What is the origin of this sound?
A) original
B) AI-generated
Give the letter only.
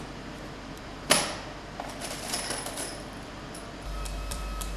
B